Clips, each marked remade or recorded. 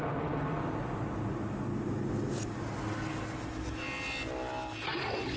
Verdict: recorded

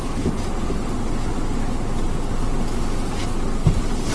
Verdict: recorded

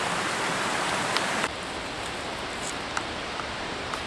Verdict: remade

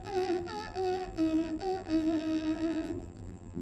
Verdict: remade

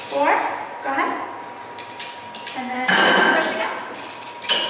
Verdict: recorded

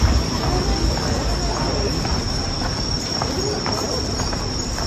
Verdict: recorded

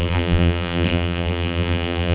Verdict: remade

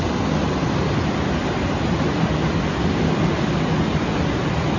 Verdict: recorded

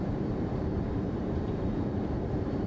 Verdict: remade